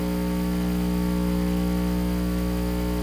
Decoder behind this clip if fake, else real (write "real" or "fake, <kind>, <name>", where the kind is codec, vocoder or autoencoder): real